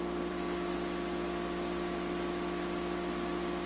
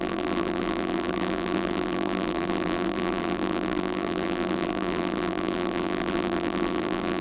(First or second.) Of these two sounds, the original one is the first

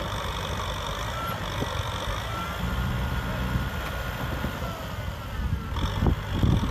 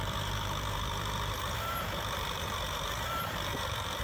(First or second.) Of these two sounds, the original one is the first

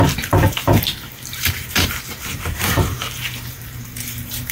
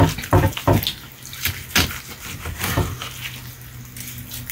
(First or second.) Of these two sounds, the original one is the second